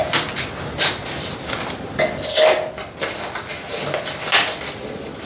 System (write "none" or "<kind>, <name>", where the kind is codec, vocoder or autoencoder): none